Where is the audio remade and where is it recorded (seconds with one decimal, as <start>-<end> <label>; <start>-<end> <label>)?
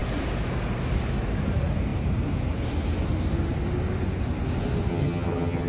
0.0-4.9 recorded; 4.9-5.7 remade